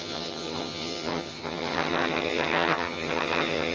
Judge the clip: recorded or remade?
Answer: remade